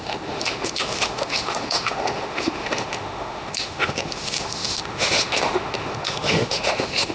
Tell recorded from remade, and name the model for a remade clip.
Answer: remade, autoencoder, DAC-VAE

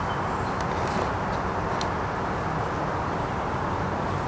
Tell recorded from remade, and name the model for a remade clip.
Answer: recorded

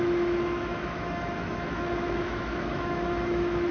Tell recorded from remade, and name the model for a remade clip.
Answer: remade, autoencoder, DAC-VAE